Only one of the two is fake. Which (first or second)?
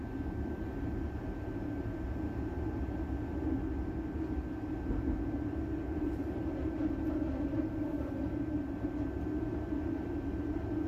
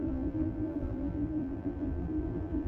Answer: second